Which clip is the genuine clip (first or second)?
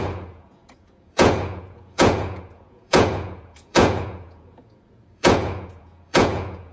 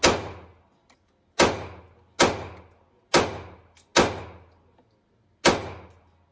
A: second